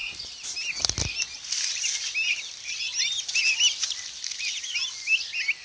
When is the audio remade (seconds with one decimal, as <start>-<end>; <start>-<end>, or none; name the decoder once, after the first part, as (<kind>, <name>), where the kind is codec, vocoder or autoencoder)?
none